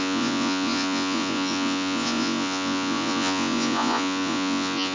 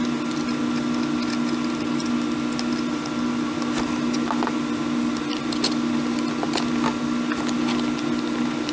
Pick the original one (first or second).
second